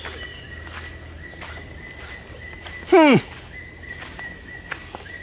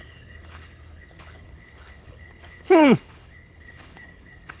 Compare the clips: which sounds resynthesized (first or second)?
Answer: second